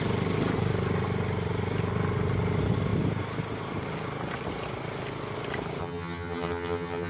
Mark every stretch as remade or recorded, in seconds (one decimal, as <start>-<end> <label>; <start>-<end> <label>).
0.0-5.8 recorded; 5.8-7.1 remade